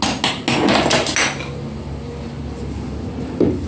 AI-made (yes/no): no